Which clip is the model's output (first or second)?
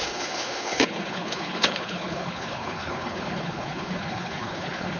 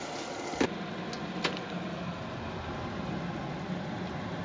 first